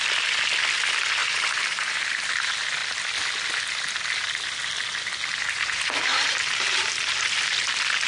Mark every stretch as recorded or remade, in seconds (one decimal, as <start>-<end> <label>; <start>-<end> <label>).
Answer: 0.0-1.2 recorded; 1.2-2.3 remade; 2.3-5.3 recorded; 5.3-7.5 remade; 7.5-8.1 recorded